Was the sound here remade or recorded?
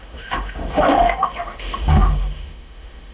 remade